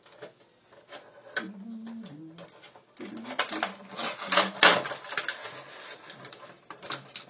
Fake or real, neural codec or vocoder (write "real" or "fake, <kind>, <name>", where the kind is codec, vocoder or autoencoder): real